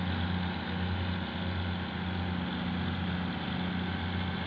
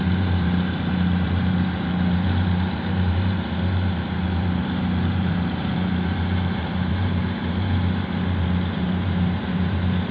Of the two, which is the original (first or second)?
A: first